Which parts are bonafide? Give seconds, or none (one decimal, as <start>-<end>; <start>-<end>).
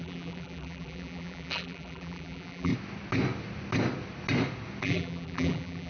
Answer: 2.7-4.8